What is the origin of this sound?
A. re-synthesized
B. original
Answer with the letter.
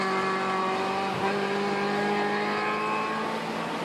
B